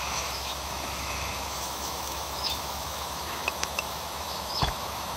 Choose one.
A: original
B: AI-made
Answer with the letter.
B